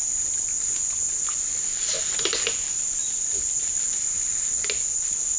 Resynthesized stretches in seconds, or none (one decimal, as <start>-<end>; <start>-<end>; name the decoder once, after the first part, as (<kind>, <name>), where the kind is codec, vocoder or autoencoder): none